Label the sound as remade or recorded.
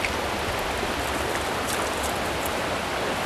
recorded